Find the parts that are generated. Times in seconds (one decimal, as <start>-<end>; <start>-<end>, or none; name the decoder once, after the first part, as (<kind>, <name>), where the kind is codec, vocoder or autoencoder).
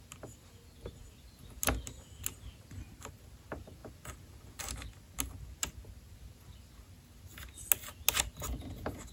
none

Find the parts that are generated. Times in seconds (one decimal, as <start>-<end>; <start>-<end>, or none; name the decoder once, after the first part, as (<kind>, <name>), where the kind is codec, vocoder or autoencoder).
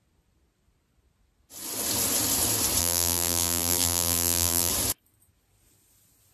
2.8-4.7 (vocoder, BigVGAN v2)